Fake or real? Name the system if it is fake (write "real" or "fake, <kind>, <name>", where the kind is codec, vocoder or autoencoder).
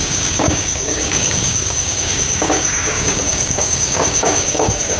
fake, codec, DAC